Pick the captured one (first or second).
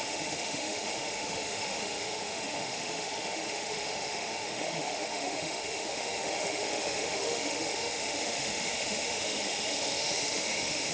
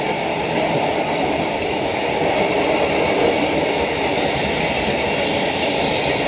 second